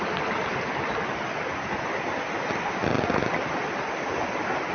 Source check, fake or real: real